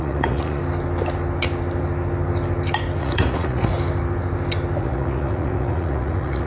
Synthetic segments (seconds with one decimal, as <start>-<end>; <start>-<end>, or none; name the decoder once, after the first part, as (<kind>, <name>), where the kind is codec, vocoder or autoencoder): 0.0-0.6 (vocoder, Vocos); 3.0-3.7; 4.8-6.5